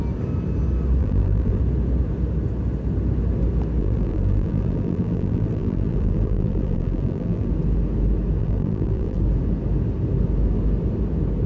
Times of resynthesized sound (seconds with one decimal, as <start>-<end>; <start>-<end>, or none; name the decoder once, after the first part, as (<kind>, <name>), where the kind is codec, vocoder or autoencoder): 1.0-1.6 (vocoder, BigVGAN v2); 3.8-7.5; 8.4-9.2